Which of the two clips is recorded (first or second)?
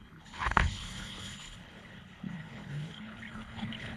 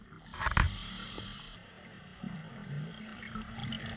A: second